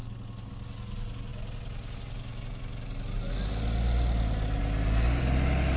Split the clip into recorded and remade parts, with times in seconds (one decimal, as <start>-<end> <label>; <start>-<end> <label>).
0.0-5.8 recorded